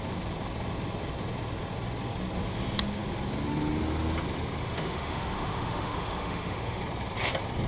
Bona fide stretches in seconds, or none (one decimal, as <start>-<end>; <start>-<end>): 0.0-4.6; 6.8-7.7